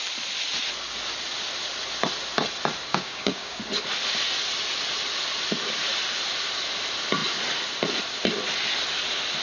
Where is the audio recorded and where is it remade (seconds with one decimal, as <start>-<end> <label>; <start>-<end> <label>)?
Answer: 0.0-2.9 recorded; 2.9-3.6 remade; 3.6-9.4 recorded

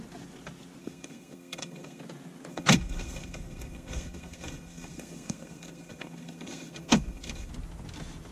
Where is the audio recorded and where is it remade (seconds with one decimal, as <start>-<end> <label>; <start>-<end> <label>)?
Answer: 0.0-0.8 recorded; 0.8-2.0 remade; 2.0-2.5 recorded; 2.5-7.5 remade; 7.5-8.3 recorded

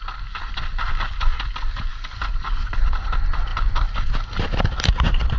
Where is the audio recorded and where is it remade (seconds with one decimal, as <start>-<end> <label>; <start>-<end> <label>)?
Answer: 0.0-1.9 recorded; 1.9-3.0 remade; 3.0-3.5 recorded; 3.5-4.6 remade; 4.6-5.4 recorded

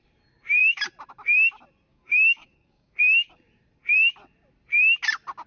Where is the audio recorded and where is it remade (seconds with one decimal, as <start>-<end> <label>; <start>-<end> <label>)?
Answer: 0.0-1.9 recorded; 1.9-3.0 remade; 3.0-5.5 recorded

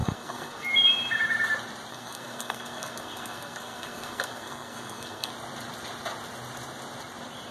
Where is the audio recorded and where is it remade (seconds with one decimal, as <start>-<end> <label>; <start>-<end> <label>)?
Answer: 0.0-0.7 remade; 0.7-1.9 recorded; 1.9-5.3 remade; 5.3-7.5 recorded